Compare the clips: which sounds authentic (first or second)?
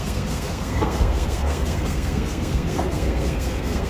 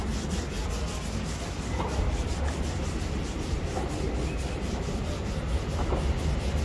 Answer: second